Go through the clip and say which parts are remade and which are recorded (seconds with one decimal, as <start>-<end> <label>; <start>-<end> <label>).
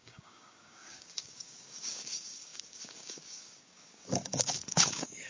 0.0-5.3 remade